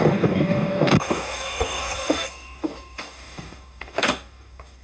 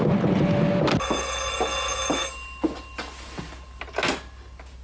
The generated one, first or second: first